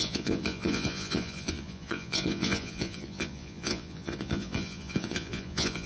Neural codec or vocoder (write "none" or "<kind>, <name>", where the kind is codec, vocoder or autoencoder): vocoder, Vocos